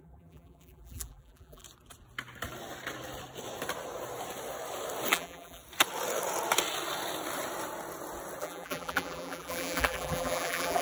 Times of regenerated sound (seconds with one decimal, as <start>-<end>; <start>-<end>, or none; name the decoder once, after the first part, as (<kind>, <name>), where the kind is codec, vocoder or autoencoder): 0.0-1.6 (vocoder, BigVGAN v2); 5.1-5.6; 8.4-10.8